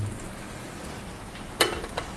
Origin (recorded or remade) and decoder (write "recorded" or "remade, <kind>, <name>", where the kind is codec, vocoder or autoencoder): remade, vocoder, BigVGAN v2